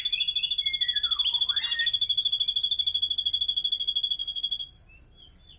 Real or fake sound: real